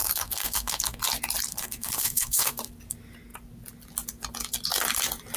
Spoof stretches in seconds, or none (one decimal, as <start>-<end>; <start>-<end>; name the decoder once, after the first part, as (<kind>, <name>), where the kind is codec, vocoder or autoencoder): 0.0-1.0 (codec, SNAC); 1.5-2.7